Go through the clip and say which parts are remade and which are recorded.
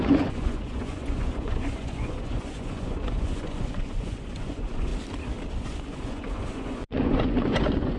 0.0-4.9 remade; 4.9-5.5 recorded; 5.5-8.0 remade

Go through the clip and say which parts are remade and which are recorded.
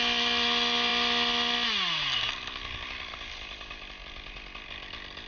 0.0-5.3 recorded